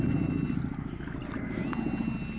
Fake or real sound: real